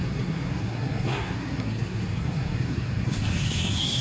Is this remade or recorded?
remade